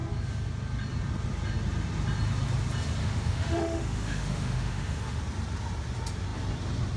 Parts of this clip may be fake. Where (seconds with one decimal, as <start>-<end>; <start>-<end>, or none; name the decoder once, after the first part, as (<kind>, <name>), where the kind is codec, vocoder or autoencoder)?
3.0-5.2 (autoencoder, DAC-VAE)